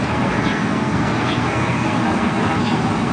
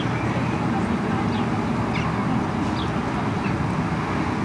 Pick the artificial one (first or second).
first